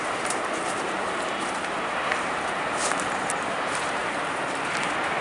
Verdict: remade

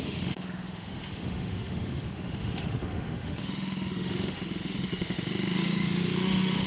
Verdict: remade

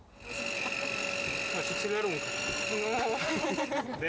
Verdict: recorded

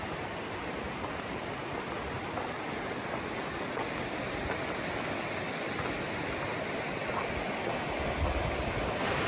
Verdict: recorded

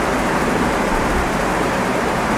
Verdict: remade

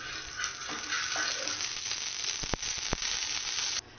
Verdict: recorded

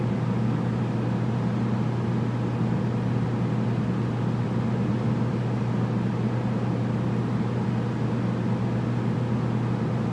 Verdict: recorded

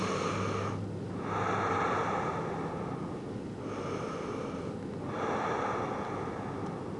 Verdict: recorded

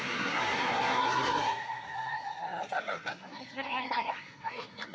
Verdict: remade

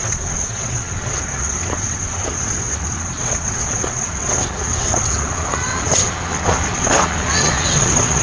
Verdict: remade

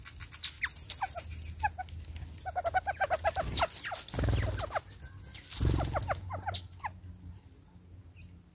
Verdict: recorded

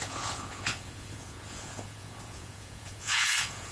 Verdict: remade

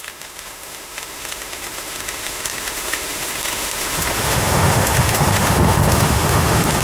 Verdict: remade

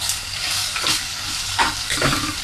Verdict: remade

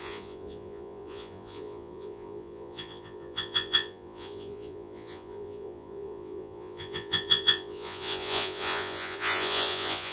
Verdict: remade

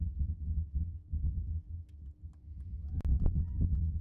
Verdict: recorded